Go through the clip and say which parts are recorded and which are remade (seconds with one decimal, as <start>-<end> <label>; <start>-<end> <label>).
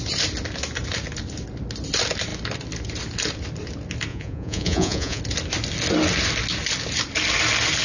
0.0-4.1 recorded; 4.1-5.2 remade; 5.2-7.8 recorded